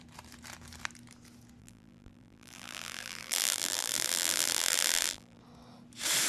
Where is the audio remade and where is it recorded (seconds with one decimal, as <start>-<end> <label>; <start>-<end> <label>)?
0.0-1.6 recorded; 1.6-5.4 remade; 5.4-6.3 recorded